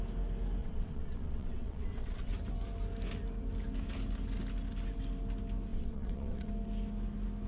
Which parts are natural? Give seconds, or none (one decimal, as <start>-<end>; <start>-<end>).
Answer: 0.0-0.6; 2.3-5.7; 6.5-7.5